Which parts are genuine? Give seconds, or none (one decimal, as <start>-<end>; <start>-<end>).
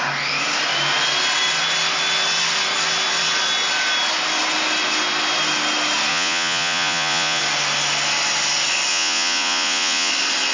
0.0-6.1; 7.4-8.9; 10.1-10.5